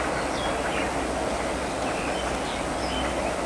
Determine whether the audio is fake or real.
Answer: real